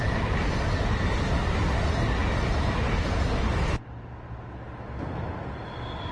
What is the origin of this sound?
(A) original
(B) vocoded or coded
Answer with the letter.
A